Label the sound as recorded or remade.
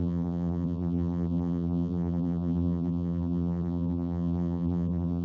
remade